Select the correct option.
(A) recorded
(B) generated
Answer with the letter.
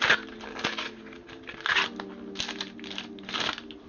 A